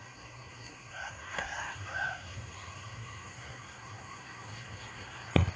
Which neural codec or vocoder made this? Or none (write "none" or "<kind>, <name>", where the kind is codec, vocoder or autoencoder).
codec, SNAC